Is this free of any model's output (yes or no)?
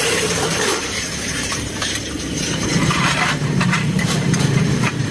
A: no